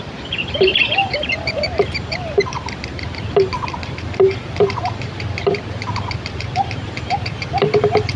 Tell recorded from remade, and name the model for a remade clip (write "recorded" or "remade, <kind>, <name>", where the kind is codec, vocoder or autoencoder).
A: remade, vocoder, BigVGAN v2